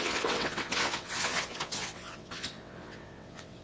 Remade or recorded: remade